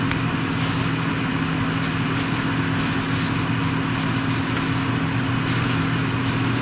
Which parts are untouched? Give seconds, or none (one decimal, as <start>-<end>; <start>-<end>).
0.0-6.6